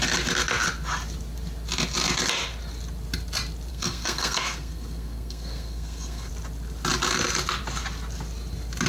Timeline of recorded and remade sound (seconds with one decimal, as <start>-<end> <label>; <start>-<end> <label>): 0.0-3.7 recorded; 3.7-6.3 remade; 6.3-8.9 recorded